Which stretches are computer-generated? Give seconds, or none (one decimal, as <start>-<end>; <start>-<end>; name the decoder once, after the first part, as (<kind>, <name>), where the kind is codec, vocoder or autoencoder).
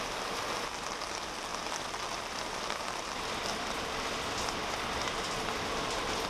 1.5-3.9 (vocoder, BigVGAN v2)